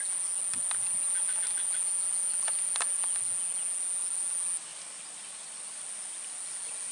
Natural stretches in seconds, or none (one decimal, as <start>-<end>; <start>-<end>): 0.0-6.9